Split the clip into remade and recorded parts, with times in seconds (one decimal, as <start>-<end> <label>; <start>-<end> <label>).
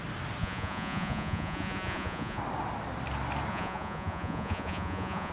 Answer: 0.0-0.4 recorded; 0.4-2.4 remade; 2.4-3.5 recorded; 3.5-5.3 remade